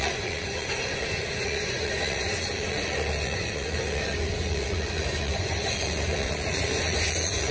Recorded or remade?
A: remade